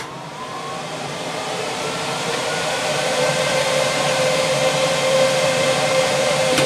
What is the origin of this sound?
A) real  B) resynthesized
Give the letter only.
B